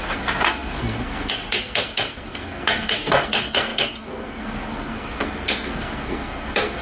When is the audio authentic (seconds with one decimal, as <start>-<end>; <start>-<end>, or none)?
none